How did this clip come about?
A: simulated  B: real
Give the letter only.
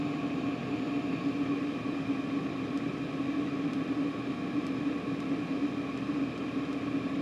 B